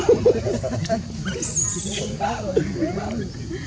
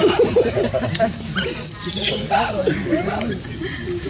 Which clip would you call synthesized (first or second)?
second